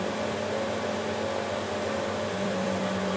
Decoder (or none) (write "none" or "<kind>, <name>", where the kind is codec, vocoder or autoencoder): vocoder, BigVGAN v2